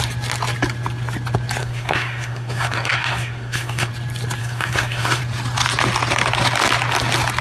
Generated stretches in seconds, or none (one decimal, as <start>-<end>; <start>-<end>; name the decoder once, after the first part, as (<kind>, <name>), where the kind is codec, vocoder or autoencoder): 1.6-3.9 (codec, SNAC); 4.4-5.2